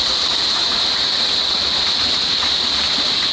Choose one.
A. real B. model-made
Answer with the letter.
A